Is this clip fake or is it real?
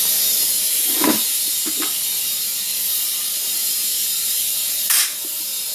fake